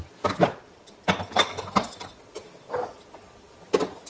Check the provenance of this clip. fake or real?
real